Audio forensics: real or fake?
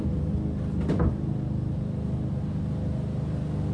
real